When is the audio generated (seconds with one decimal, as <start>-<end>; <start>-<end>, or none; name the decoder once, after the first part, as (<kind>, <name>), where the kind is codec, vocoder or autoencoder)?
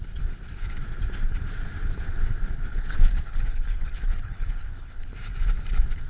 2.7-5.1 (codec, HILCodec)